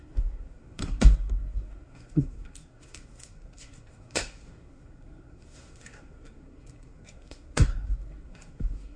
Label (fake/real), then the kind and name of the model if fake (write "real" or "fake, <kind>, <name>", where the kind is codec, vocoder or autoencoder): fake, codec, SNAC